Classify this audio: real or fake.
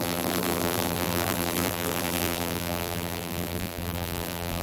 fake